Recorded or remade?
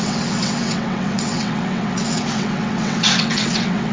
remade